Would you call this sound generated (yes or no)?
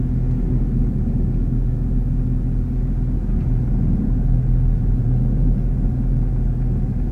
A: no